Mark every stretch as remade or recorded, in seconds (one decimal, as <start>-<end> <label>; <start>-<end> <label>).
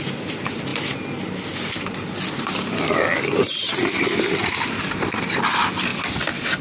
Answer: 0.0-6.6 recorded